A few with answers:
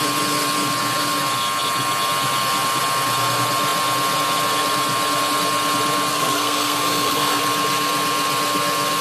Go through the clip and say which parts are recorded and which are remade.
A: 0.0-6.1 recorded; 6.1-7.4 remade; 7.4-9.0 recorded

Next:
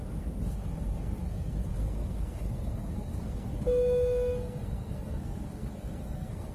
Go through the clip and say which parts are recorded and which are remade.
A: 0.0-6.5 remade

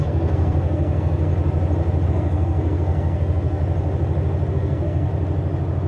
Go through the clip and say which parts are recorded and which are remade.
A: 0.0-1.3 remade; 1.3-2.1 recorded; 2.1-3.6 remade; 3.6-4.5 recorded; 4.5-5.1 remade; 5.1-5.9 recorded

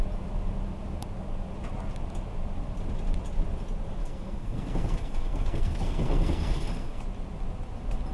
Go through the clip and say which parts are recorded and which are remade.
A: 0.0-4.0 recorded; 4.0-7.0 remade; 7.0-8.1 recorded

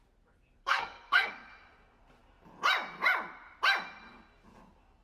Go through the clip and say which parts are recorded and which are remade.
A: 0.0-0.6 recorded; 0.6-1.3 remade; 1.3-5.0 recorded